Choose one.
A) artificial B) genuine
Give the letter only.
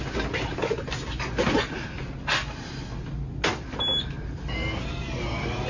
B